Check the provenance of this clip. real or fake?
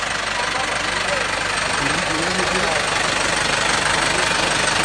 real